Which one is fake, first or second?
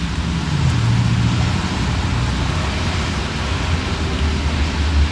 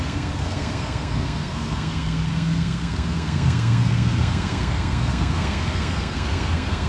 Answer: second